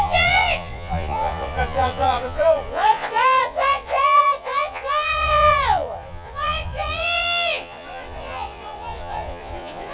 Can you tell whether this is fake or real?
fake